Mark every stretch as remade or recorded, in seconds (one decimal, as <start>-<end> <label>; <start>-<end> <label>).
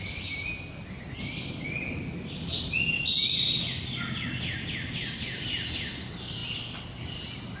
0.0-7.6 recorded